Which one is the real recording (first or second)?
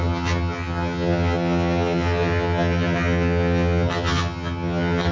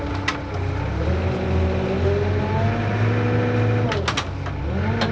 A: second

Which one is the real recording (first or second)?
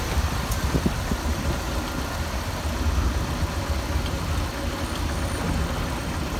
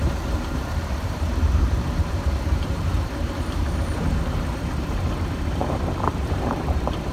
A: first